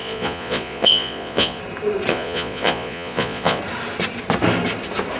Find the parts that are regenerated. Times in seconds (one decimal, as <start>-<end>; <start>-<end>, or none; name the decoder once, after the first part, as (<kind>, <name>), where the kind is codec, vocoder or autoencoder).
0.0-1.6 (vocoder, Vocos); 2.1-3.6